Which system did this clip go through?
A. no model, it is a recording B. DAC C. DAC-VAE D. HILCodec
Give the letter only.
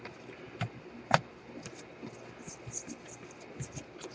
A